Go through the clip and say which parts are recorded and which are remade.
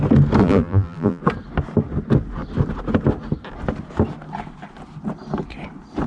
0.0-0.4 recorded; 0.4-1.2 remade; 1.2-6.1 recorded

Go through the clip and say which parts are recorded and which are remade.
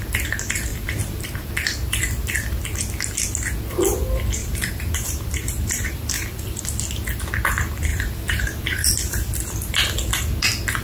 0.0-0.7 recorded; 0.7-1.5 remade; 1.5-4.4 recorded; 4.4-6.6 remade; 6.6-7.9 recorded; 7.9-8.9 remade; 8.9-10.8 recorded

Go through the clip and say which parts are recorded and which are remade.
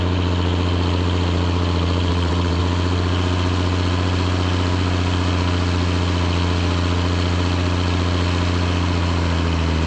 0.0-2.1 recorded; 2.1-2.6 remade; 2.6-9.9 recorded